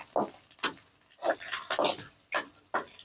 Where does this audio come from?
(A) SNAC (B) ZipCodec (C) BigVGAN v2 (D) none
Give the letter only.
D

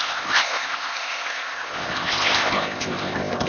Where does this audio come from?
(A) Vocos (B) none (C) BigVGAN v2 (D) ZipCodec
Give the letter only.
D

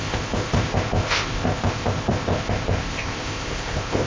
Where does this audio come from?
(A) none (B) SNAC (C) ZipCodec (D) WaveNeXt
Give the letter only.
C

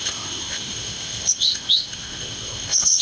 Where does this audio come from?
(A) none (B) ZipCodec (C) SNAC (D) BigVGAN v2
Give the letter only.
B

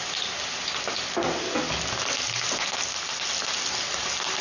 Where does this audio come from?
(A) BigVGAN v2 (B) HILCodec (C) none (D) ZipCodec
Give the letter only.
C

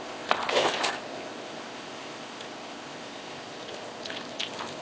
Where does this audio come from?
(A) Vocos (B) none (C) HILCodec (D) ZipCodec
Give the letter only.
D